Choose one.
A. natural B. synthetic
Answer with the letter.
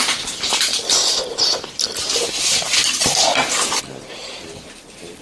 B